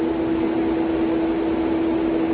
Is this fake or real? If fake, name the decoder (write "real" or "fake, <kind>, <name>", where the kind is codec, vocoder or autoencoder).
real